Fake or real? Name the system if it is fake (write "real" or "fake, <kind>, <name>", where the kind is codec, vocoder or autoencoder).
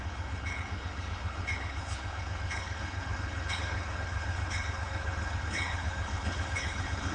fake, codec, HILCodec